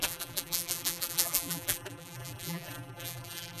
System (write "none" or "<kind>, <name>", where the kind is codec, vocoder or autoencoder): vocoder, BigVGAN v2